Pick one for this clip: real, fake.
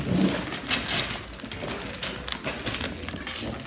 real